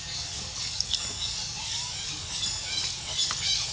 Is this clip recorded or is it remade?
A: remade